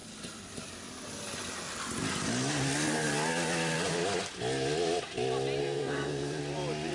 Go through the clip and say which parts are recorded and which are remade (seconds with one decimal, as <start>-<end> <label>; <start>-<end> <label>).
0.0-5.6 recorded; 5.6-6.4 remade; 6.4-6.9 recorded